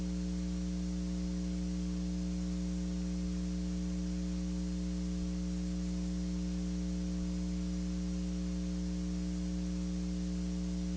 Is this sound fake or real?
real